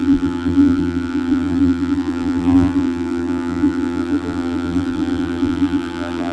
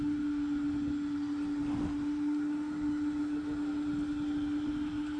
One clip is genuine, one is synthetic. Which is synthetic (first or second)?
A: first